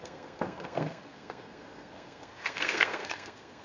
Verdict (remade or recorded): remade